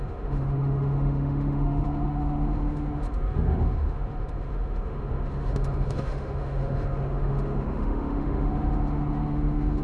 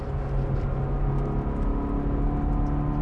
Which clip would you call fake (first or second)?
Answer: first